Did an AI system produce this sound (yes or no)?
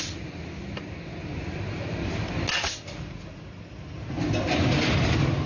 no